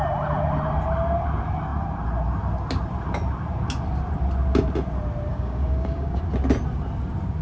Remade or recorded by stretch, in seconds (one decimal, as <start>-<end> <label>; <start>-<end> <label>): 0.0-5.3 recorded; 5.3-6.2 remade; 6.2-7.4 recorded